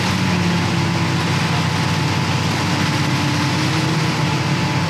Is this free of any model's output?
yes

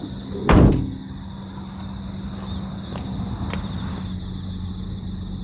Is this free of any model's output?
yes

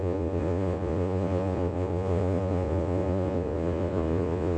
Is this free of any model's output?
no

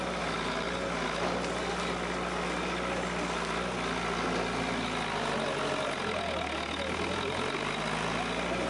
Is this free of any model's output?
yes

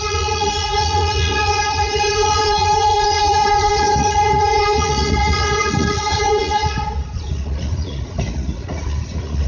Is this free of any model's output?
no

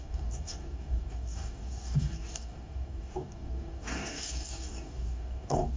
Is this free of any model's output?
no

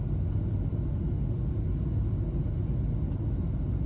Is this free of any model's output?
yes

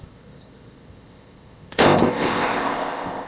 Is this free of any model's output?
no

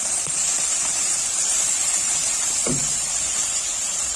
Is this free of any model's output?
no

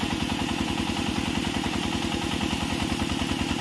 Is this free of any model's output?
yes